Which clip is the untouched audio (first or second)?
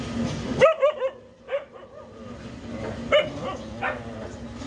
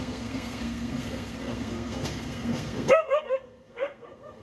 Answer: first